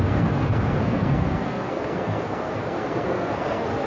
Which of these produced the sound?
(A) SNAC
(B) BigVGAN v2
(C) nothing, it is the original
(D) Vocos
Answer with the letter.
A